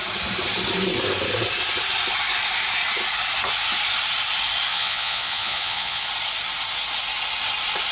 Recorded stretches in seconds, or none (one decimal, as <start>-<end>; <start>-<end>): 0.0-4.7; 6.1-7.9